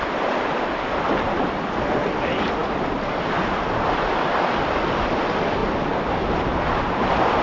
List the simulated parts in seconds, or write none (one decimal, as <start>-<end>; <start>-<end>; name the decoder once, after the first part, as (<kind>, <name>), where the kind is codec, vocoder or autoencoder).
0.0-5.6 (vocoder, BigVGAN v2); 6.2-7.4